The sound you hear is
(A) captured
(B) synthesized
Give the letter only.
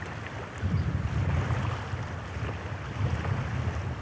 A